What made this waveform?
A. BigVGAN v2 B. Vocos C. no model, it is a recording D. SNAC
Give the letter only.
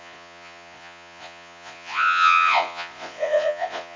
B